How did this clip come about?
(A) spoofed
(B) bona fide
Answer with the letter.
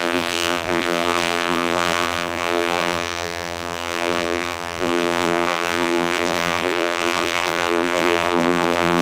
A